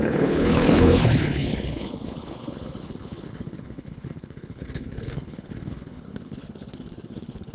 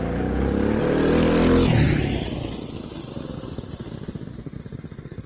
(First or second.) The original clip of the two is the second